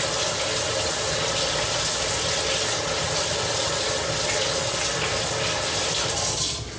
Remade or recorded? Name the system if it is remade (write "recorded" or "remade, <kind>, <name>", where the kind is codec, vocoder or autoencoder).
recorded